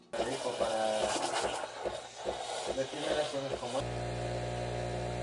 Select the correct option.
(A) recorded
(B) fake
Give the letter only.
A